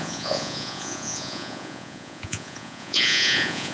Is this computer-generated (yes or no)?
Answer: yes